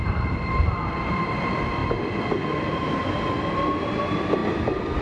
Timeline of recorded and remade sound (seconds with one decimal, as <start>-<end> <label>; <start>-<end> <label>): 0.0-1.8 remade; 1.8-2.5 recorded; 2.5-3.0 remade; 3.0-3.8 recorded; 3.8-4.4 remade; 4.4-5.0 recorded

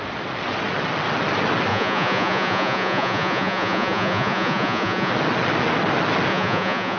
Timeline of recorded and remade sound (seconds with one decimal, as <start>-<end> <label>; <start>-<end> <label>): 0.0-1.7 recorded; 1.7-5.1 remade; 5.1-6.3 recorded; 6.3-7.0 remade

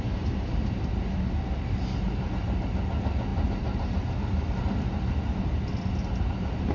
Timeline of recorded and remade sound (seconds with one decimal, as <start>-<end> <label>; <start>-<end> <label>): 0.0-6.7 recorded

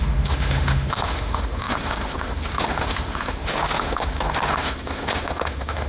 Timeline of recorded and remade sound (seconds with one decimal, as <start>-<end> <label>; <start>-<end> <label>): 0.0-5.9 remade